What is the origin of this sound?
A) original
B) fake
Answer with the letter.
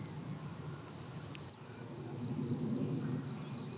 A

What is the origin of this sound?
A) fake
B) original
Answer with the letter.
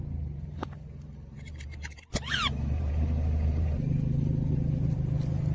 A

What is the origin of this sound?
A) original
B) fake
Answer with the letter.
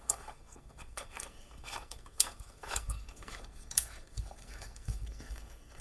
B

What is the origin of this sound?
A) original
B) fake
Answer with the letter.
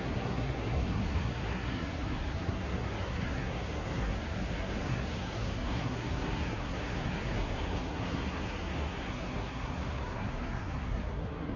B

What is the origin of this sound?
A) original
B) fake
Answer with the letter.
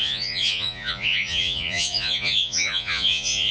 B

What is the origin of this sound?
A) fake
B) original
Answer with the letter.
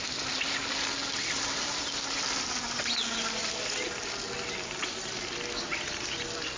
B